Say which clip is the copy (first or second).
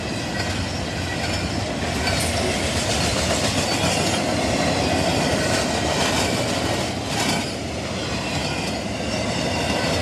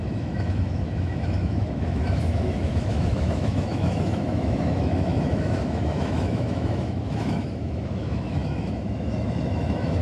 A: second